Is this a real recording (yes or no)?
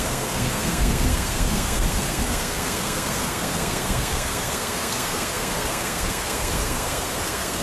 no